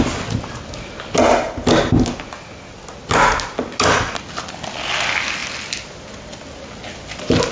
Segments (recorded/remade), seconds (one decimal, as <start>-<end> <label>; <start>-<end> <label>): 0.0-7.5 recorded